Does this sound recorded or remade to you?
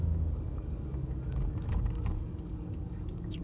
remade